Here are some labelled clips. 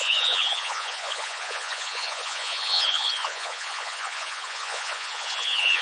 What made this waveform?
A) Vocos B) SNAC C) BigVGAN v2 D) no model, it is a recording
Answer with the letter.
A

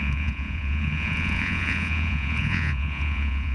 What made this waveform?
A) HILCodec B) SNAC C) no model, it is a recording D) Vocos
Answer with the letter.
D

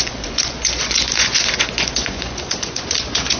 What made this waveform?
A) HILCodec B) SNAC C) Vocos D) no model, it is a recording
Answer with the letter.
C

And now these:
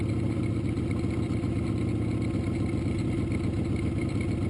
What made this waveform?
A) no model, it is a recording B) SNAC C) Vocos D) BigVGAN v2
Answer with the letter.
A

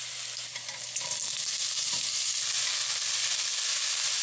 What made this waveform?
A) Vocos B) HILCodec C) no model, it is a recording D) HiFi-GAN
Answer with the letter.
C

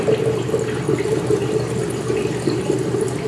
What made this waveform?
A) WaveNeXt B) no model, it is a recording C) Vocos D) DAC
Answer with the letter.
B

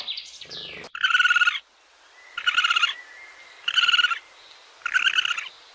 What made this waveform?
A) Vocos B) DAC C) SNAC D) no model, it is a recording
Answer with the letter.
D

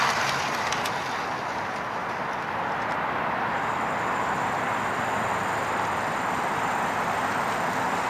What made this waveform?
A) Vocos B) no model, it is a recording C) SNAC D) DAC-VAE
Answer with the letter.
B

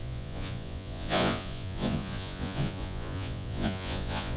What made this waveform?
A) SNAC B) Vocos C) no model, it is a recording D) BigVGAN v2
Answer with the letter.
B